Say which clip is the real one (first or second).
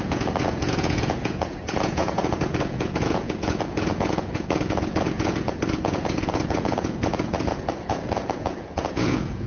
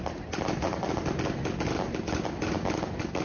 second